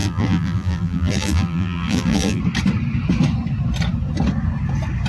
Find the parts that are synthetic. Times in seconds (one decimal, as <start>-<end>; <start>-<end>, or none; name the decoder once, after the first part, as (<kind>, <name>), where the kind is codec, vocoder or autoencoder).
0.0-2.4 (vocoder, BigVGAN v2)